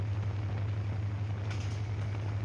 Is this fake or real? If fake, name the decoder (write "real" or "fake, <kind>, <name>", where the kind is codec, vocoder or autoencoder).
real